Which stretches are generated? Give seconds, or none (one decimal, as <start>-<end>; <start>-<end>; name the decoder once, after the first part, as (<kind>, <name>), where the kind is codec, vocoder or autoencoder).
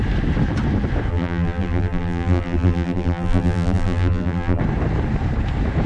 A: 1.1-4.6 (vocoder, BigVGAN v2)